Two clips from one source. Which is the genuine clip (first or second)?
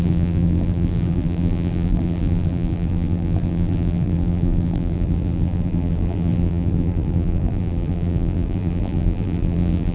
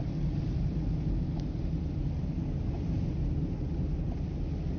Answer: second